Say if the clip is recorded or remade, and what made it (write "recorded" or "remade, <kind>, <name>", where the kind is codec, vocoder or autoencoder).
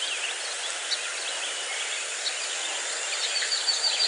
recorded